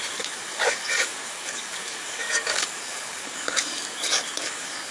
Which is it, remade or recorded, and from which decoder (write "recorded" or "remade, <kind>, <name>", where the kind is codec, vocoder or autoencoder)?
remade, codec, DAC